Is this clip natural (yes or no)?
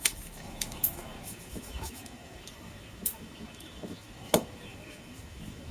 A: no